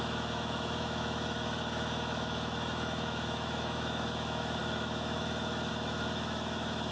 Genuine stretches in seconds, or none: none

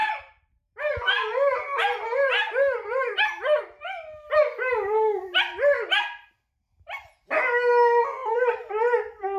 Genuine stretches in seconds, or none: 3.6-8.2